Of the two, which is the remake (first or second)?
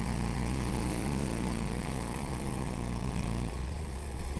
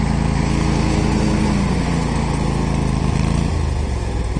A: first